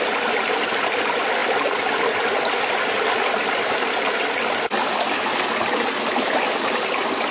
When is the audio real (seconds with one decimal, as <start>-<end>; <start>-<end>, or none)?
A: none